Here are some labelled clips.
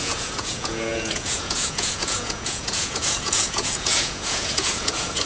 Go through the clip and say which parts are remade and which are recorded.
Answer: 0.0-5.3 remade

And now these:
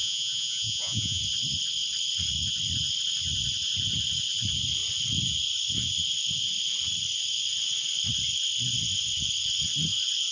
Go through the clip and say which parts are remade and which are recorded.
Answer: 0.0-1.2 remade; 1.2-10.3 recorded